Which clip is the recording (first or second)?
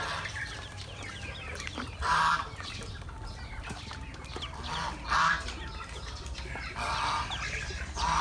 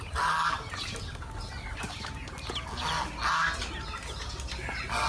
second